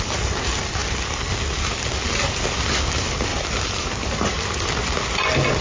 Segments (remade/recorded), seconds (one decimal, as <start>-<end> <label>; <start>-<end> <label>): 0.0-3.3 recorded; 3.3-4.0 remade; 4.0-5.6 recorded